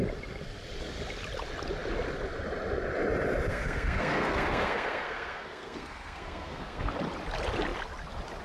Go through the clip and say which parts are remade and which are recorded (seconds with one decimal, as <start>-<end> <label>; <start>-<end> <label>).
0.0-3.5 recorded; 3.5-6.9 remade; 6.9-8.4 recorded